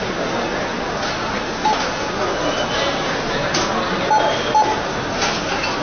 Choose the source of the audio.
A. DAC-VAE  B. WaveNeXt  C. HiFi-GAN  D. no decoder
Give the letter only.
D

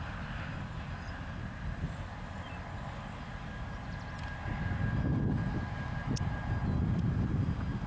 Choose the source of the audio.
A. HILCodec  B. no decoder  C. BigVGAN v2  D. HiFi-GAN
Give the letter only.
B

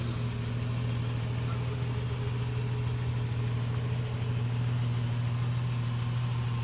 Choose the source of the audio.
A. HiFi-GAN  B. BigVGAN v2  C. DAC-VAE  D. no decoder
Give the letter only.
D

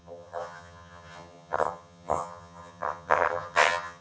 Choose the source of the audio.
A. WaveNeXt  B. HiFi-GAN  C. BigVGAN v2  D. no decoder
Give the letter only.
B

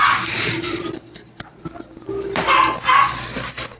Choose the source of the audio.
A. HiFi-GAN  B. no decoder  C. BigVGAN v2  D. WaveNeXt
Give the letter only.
B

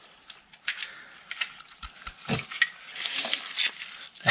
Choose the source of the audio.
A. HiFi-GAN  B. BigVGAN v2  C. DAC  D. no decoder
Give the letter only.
D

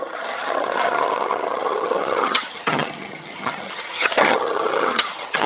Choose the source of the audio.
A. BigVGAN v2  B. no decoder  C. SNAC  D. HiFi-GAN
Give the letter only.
D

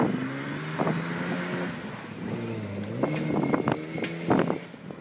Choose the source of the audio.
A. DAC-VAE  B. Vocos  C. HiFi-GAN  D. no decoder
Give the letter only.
D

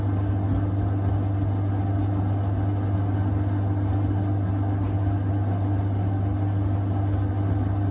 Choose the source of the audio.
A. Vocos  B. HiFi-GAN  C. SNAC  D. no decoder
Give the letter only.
D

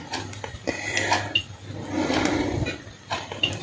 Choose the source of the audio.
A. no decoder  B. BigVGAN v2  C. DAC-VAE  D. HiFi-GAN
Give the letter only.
A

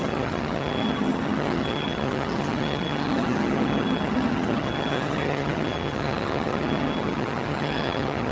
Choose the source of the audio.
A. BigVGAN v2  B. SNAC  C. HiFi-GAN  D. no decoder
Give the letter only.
C